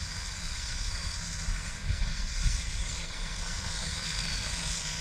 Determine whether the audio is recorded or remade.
remade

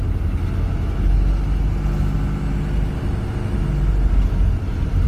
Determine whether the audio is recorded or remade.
recorded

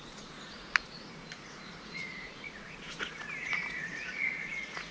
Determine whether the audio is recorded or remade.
remade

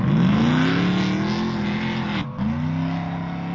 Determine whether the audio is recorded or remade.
recorded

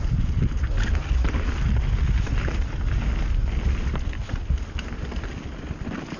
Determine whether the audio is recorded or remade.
recorded